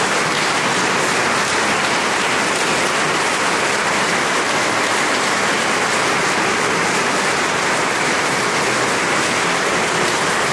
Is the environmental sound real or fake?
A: real